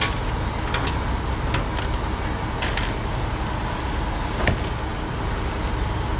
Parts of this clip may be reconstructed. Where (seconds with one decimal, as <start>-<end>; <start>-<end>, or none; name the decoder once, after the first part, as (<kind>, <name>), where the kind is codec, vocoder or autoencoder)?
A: none